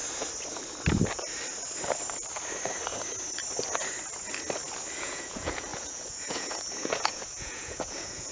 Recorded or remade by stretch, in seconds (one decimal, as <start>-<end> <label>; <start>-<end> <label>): 0.0-5.0 recorded; 5.0-8.3 remade